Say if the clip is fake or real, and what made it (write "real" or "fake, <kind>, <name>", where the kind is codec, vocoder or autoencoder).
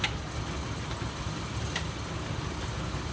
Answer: real